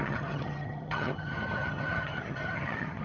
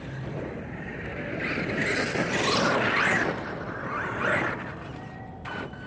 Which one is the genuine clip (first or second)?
second